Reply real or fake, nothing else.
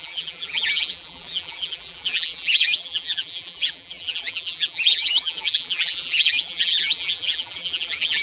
fake